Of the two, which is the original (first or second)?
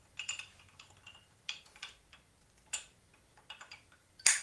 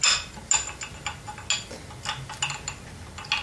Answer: second